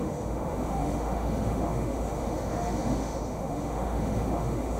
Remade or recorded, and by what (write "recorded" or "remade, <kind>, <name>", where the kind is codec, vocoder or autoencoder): remade, autoencoder, DAC-VAE